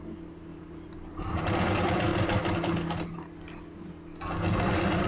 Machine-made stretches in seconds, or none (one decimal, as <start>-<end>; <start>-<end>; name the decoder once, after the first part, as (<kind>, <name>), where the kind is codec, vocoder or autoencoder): 0.0-2.1 (vocoder, BigVGAN v2)